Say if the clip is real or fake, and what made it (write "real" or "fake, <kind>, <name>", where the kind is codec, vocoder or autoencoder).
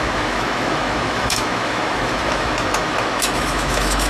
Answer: fake, autoencoder, DAC-VAE